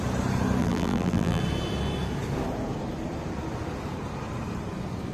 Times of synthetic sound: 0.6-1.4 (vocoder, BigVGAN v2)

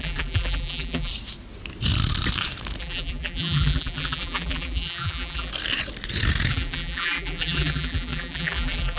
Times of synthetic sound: 0.0-1.1 (vocoder, BigVGAN v2); 2.8-5.5; 6.5-9.0

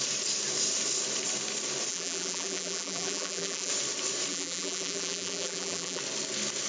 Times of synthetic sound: 1.9-3.7 (vocoder, BigVGAN v2); 4.3-6.0

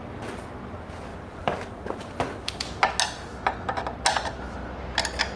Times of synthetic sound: 1.1-1.7 (vocoder, BigVGAN v2)

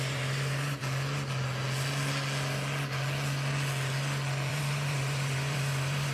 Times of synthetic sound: 0.0-0.8 (vocoder, BigVGAN v2); 4.5-6.1